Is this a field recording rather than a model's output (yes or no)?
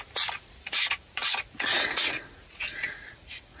no